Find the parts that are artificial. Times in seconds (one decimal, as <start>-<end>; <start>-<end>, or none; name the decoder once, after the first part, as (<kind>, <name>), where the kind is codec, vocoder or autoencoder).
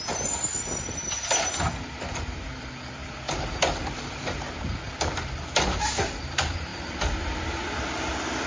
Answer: 0.0-0.5 (vocoder, BigVGAN v2); 2.3-8.5